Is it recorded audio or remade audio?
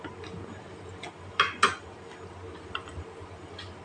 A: recorded